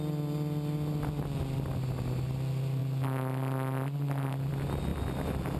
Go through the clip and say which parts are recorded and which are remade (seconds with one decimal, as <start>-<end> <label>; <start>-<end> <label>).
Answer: 0.0-4.9 recorded; 4.9-5.6 remade